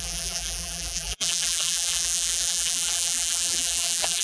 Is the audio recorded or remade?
remade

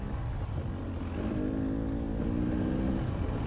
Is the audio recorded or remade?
recorded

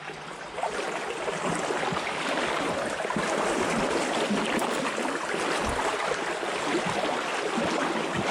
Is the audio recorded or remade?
recorded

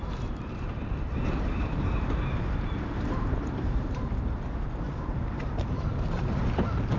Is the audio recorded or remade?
remade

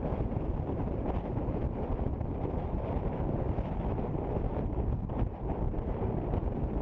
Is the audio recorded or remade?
remade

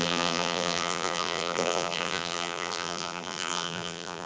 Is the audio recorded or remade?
remade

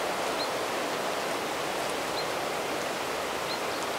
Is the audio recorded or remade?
recorded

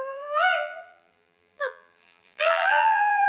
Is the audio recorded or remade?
remade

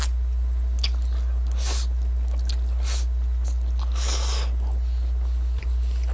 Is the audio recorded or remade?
recorded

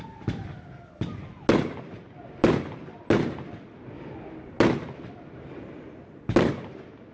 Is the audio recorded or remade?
recorded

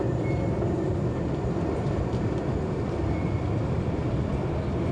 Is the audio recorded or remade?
recorded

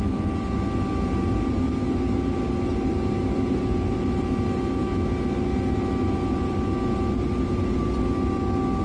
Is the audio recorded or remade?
recorded